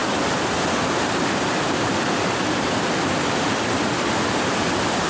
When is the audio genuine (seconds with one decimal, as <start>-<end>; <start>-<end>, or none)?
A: 0.0-5.1